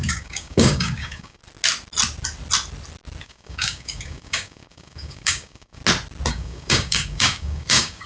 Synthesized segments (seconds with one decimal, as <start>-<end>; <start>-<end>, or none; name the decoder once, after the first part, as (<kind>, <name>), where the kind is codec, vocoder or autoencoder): 0.0-1.4 (codec, DAC); 3.2-5.8; 6.3-8.1